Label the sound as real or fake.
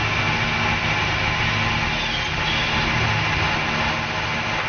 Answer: real